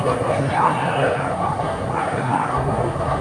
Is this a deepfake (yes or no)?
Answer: yes